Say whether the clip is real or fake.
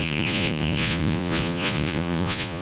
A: fake